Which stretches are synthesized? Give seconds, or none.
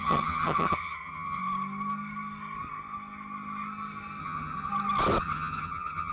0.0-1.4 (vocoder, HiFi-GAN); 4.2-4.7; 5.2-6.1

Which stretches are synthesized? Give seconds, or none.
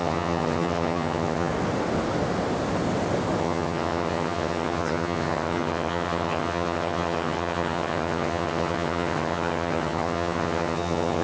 0.0-1.5 (vocoder, HiFi-GAN); 3.4-11.2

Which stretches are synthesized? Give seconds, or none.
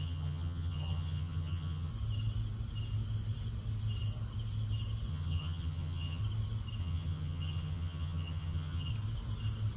0.0-1.9 (vocoder, HiFi-GAN); 5.1-6.2; 6.8-8.9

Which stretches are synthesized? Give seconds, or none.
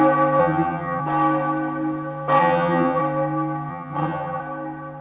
0.4-1.0 (vocoder, HiFi-GAN); 2.4-3.0; 3.7-4.4